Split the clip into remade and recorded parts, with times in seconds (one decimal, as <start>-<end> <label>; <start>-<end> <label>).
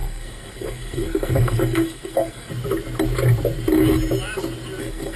0.0-2.5 remade; 2.5-4.8 recorded; 4.8-5.2 remade